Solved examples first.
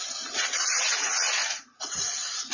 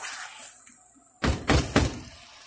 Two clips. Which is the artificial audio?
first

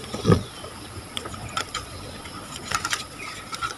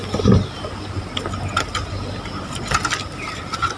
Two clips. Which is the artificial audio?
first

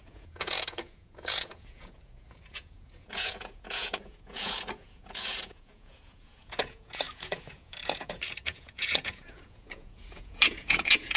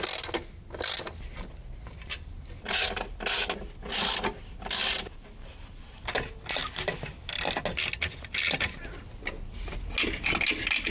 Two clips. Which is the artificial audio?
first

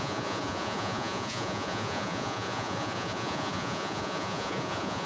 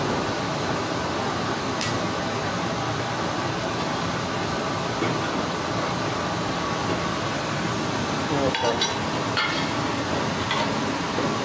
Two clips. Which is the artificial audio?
first